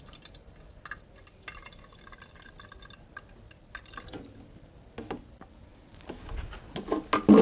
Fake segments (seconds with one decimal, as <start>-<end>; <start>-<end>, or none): none